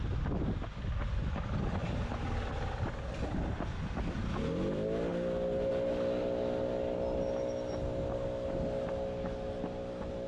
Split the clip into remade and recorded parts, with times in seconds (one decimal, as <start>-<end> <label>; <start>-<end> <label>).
0.0-10.3 recorded